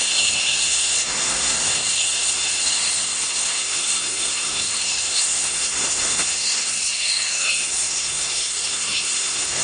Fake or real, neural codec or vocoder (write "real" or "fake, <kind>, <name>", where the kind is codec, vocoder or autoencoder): fake, codec, SNAC